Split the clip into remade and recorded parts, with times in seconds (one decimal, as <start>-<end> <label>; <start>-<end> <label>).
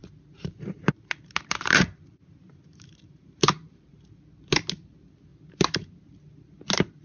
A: 0.0-4.0 remade; 4.0-5.3 recorded; 5.3-5.9 remade; 5.9-7.0 recorded